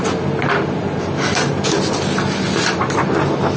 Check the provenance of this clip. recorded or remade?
recorded